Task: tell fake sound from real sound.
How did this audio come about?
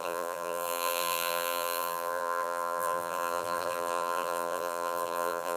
fake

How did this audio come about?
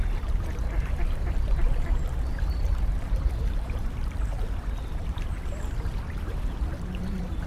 fake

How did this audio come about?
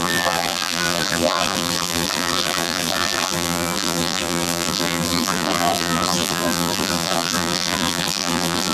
fake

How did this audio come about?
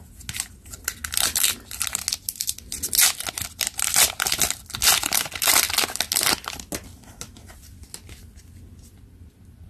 real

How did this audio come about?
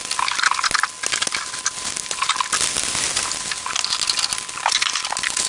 real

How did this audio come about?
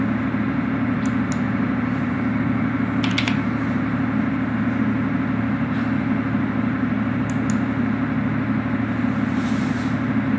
real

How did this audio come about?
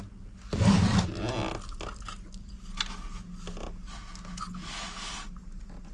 real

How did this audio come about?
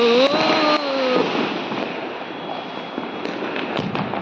real